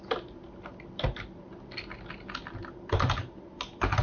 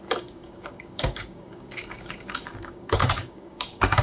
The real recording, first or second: first